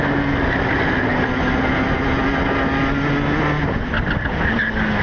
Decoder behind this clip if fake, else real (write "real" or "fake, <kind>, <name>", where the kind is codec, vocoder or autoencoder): real